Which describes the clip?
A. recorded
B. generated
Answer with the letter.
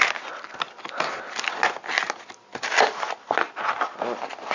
A